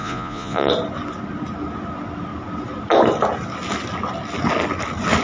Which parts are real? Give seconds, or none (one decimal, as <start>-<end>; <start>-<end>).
0.7-5.2